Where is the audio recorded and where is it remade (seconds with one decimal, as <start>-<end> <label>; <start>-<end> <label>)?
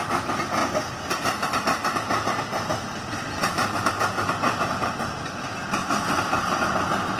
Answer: 0.0-7.2 recorded